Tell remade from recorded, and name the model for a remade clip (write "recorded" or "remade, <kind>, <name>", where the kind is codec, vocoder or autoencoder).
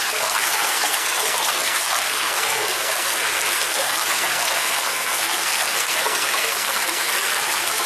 remade, codec, SNAC